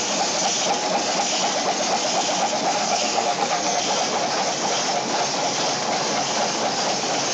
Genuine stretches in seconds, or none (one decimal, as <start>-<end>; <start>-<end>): 0.0-2.8; 3.8-7.3